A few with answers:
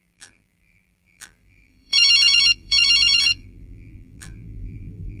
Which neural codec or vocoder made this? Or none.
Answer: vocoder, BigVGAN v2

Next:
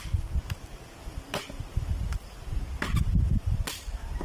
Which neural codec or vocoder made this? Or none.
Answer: none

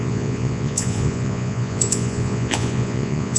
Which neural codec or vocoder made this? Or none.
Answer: vocoder, Vocos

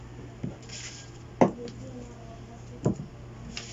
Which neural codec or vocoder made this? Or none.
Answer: none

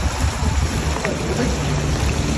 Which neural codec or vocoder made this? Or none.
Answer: none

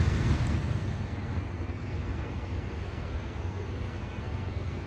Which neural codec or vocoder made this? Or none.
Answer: codec, SNAC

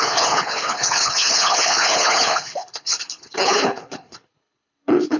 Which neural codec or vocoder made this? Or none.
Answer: codec, HILCodec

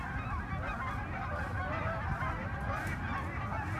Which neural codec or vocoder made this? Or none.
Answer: none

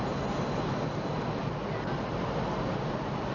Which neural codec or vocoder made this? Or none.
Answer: none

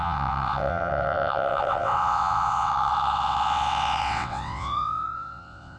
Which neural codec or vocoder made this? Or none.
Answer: vocoder, WaveNeXt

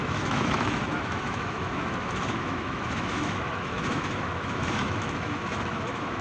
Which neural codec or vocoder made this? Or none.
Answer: autoencoder, DAC-VAE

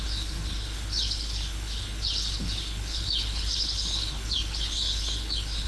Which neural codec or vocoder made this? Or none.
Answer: codec, HILCodec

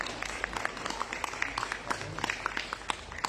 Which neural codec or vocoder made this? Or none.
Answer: none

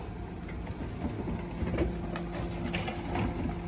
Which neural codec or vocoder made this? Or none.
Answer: none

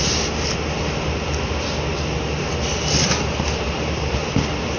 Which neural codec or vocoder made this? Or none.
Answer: none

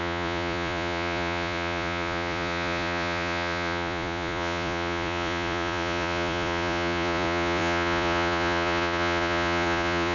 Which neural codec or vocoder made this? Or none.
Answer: vocoder, Vocos